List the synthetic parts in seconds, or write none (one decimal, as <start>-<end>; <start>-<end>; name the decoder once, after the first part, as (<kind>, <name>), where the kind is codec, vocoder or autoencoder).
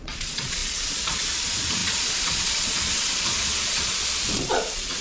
0.0-5.0 (vocoder, Vocos)